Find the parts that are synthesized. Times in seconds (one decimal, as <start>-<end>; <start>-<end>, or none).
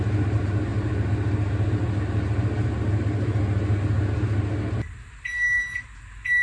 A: none